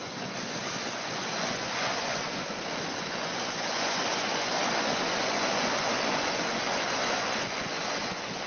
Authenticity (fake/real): fake